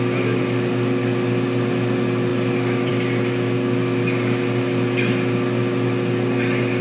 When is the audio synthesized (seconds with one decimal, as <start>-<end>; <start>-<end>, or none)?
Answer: none